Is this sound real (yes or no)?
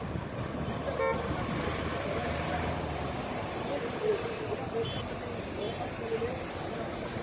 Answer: yes